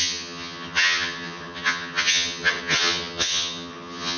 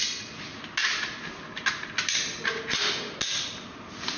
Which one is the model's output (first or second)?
first